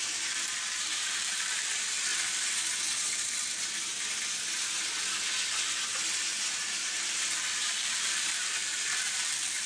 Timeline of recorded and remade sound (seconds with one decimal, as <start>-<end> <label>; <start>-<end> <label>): 0.0-2.1 remade; 2.1-6.5 recorded; 6.5-9.7 remade